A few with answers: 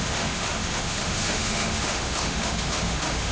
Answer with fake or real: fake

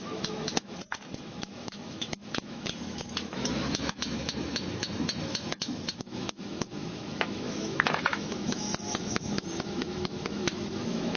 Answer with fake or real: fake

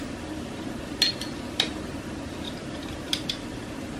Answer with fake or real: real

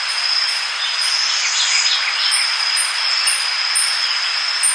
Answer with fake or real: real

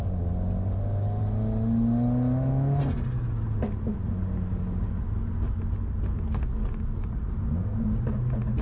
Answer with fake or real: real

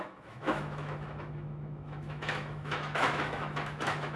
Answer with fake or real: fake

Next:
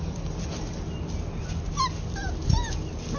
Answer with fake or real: real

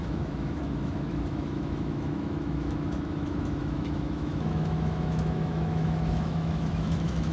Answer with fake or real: fake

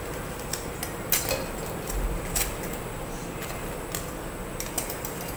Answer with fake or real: real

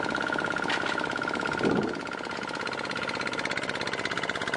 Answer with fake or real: real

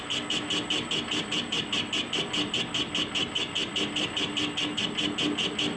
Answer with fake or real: real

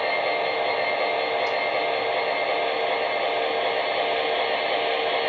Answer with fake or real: real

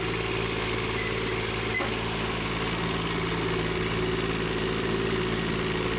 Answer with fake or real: real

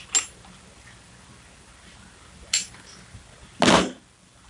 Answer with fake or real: real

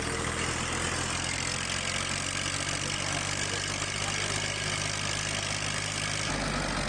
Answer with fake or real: real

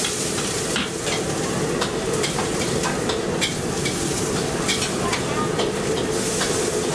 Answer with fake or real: real